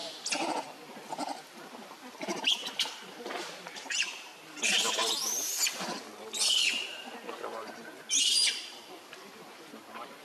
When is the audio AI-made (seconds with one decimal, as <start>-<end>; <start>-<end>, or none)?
0.6-4.3; 8.2-10.2